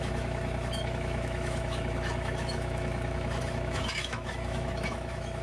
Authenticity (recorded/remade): remade